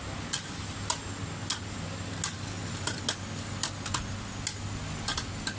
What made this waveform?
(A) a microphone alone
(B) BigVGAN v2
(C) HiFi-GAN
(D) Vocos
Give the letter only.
A